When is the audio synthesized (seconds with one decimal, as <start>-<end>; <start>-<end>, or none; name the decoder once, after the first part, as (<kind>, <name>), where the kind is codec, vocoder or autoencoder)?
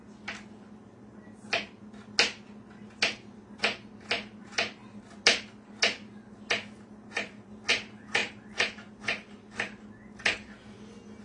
none